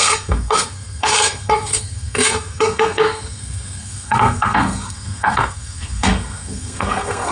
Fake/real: fake